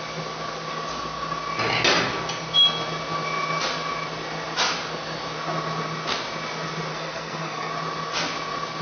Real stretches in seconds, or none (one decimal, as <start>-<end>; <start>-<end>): 0.0-6.9; 7.7-8.8